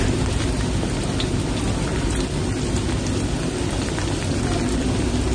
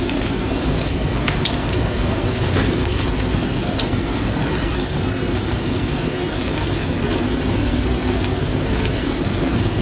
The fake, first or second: second